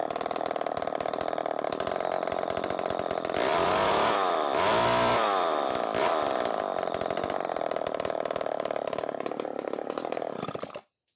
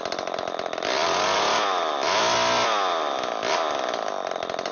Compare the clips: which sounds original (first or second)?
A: second